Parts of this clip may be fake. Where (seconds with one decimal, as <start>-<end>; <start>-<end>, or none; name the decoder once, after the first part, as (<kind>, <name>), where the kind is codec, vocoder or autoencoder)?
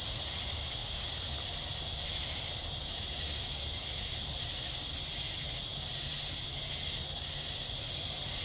none